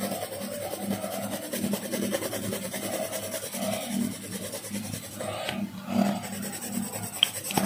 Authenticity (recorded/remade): recorded